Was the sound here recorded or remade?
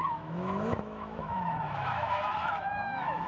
remade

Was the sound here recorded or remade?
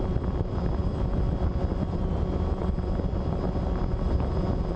remade